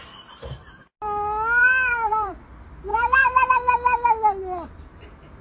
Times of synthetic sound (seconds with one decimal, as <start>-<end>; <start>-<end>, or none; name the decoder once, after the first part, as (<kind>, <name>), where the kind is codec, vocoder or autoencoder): 1.6-2.5 (vocoder, BigVGAN v2); 2.9-3.5